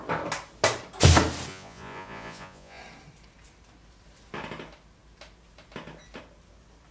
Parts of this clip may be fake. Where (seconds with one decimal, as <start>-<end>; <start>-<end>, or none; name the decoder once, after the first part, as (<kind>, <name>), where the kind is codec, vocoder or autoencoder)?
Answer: 1.5-2.8 (vocoder, Vocos)